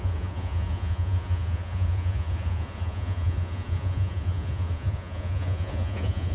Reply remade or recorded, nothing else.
remade